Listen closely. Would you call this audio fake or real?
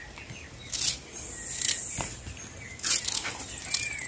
real